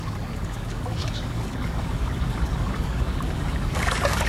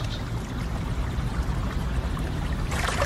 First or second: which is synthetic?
first